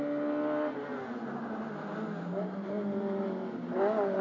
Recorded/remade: recorded